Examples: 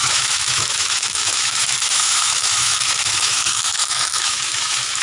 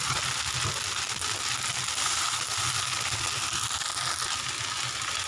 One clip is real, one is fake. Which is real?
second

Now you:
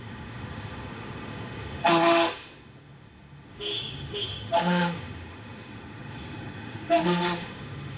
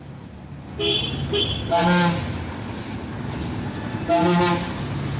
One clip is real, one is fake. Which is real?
second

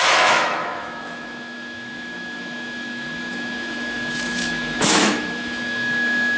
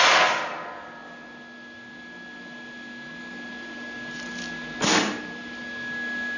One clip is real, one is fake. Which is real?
second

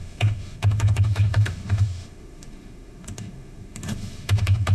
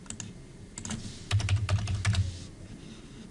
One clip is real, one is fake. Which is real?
second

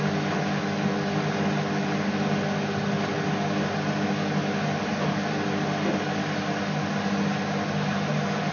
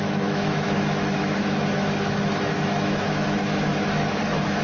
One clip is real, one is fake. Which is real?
first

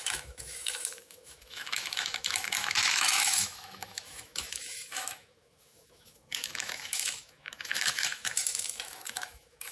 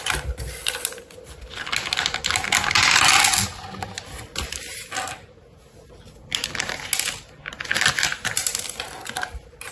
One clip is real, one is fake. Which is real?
second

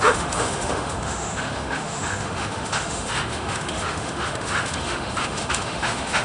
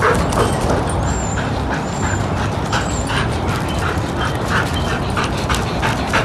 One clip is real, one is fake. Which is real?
second